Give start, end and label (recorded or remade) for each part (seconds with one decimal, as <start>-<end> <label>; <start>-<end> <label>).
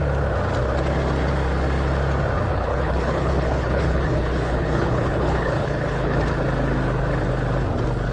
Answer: 0.0-2.5 recorded; 2.5-6.2 remade; 6.2-8.1 recorded